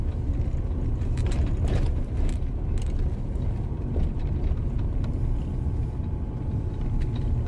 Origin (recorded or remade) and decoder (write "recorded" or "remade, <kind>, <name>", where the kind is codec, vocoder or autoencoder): recorded